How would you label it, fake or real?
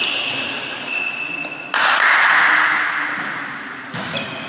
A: real